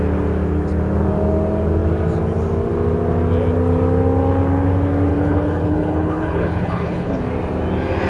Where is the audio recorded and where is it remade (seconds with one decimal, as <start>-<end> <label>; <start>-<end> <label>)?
0.0-5.1 recorded; 5.1-7.2 remade; 7.2-8.1 recorded